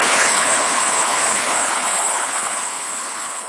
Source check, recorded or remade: remade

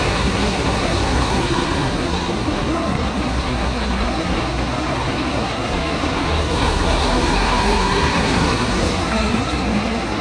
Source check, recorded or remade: remade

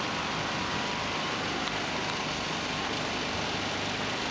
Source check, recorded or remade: recorded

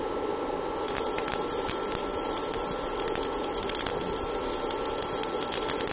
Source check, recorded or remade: recorded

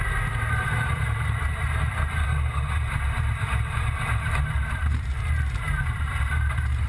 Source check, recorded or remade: remade